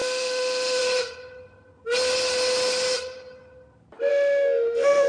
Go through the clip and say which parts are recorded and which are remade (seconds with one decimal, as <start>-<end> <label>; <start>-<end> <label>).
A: 0.0-0.8 remade; 0.8-4.1 recorded; 4.1-5.1 remade